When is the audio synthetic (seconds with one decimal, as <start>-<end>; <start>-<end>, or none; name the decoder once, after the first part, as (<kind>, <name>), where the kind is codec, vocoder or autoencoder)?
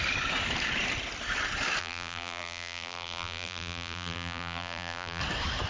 1.8-5.2 (vocoder, BigVGAN v2)